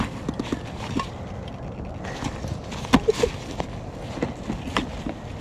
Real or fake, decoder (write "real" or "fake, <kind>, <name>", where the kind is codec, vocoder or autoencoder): real